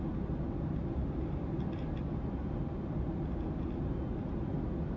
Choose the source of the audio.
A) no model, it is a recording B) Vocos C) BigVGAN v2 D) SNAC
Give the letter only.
A